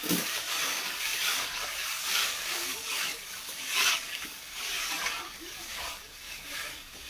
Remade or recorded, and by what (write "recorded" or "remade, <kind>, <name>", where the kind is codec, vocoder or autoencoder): remade, codec, DAC